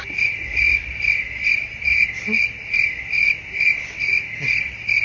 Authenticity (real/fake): real